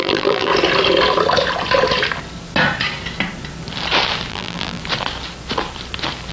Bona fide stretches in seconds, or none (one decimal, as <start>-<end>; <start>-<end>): 0.5-4.3; 4.8-6.3